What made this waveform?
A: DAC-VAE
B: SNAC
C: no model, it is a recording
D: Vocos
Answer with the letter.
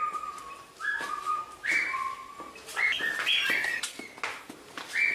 C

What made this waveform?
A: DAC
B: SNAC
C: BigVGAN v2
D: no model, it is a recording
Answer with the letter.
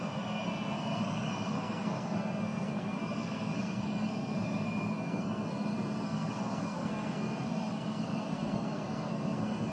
B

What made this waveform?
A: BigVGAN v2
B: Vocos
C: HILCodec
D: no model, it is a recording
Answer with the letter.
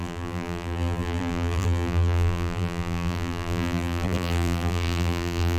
A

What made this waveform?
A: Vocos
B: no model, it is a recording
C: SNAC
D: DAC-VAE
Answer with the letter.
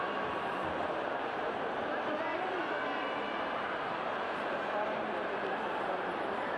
B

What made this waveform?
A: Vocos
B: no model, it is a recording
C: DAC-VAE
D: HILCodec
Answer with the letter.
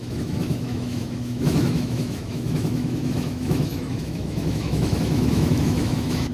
C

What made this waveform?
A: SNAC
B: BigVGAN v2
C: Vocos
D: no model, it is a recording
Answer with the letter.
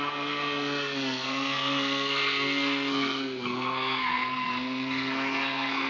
A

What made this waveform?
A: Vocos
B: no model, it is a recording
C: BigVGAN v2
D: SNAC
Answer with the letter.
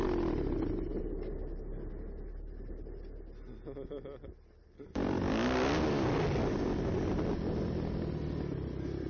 B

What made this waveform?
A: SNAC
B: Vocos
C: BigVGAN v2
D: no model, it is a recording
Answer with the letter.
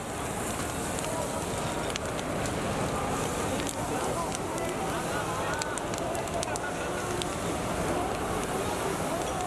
D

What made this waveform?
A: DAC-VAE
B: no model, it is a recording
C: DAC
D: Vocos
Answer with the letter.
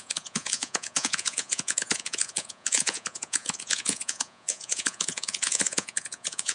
D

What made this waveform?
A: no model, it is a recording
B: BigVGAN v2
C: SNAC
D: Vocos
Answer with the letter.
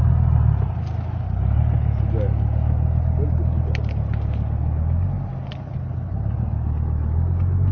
A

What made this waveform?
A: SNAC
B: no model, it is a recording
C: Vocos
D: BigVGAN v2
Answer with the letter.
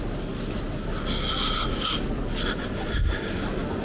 B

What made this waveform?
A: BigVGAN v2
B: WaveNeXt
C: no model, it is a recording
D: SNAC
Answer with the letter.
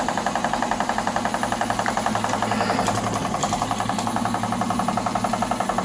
C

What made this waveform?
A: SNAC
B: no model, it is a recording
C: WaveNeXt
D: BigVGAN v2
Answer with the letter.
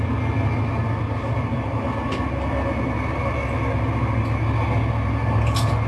B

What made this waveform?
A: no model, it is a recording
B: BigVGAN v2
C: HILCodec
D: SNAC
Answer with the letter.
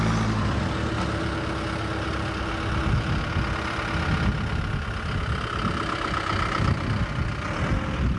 A